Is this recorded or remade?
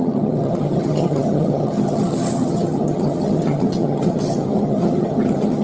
remade